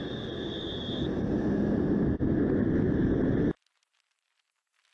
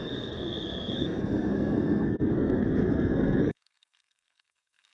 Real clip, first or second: first